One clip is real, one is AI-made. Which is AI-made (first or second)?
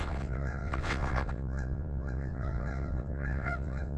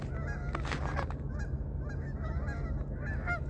first